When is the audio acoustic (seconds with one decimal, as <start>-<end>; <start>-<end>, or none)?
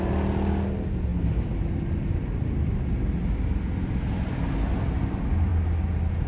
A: 0.0-6.3